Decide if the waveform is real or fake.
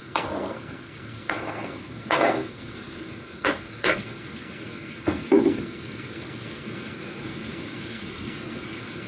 fake